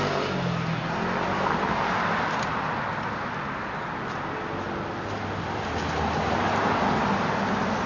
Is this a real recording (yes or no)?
yes